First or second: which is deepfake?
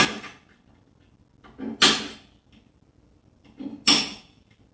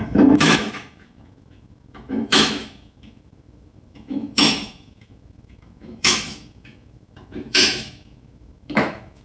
second